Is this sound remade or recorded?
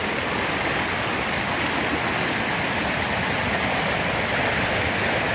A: recorded